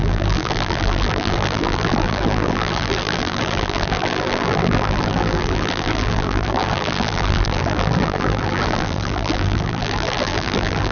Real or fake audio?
fake